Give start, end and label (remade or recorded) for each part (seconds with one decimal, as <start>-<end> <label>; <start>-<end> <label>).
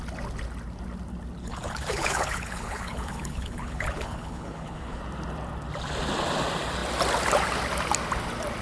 0.0-1.4 recorded; 1.4-5.0 remade; 5.0-8.6 recorded